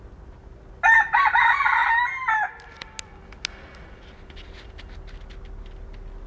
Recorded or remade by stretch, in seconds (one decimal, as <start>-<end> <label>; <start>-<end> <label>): 0.0-6.3 recorded